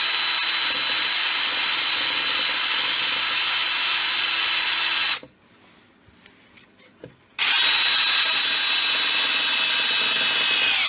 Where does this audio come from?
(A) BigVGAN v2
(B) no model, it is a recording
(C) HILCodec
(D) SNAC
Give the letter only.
B